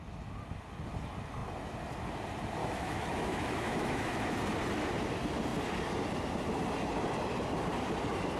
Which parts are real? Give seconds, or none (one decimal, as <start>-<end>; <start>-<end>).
0.0-2.6; 4.4-8.4